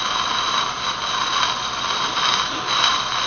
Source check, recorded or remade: recorded